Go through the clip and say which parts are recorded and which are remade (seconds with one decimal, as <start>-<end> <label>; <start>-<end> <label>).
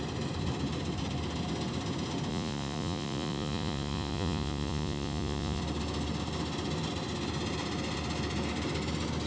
0.0-2.3 recorded; 2.3-5.6 remade; 5.6-9.3 recorded